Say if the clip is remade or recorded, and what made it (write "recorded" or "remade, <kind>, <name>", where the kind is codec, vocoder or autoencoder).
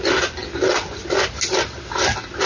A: recorded